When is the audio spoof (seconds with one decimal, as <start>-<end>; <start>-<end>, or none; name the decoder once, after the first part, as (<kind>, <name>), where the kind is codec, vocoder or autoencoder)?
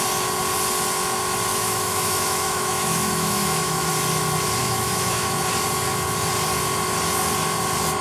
1.5-3.9 (autoencoder, DAC-VAE); 4.6-5.4